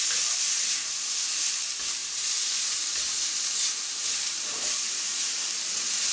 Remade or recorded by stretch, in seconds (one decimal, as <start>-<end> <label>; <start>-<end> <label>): 0.0-2.0 recorded; 2.0-6.1 remade